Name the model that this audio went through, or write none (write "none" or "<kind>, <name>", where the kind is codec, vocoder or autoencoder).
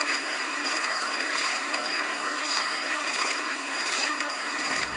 codec, SNAC